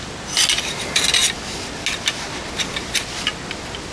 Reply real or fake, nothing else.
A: real